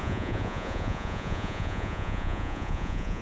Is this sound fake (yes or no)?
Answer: yes